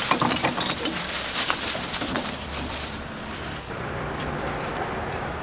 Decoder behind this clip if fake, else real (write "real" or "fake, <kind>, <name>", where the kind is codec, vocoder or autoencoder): fake, vocoder, BigVGAN v2